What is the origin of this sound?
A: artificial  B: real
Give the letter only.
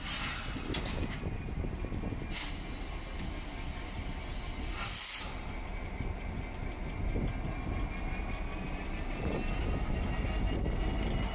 B